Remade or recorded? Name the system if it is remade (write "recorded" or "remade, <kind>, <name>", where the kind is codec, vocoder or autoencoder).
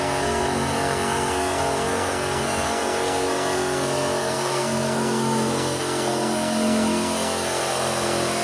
remade, codec, SNAC